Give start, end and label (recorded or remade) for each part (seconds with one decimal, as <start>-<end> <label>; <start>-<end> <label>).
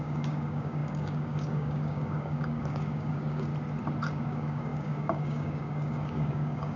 0.0-3.5 remade; 3.5-4.1 recorded; 4.1-6.8 remade